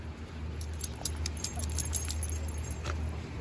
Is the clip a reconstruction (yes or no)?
no